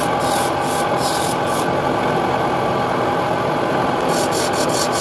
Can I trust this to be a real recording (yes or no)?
yes